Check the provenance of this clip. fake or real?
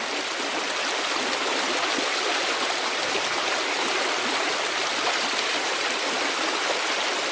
real